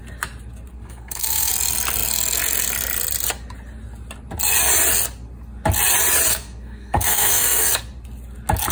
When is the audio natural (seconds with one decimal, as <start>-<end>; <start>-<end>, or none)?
0.0-0.7; 1.5-6.3; 7.7-8.7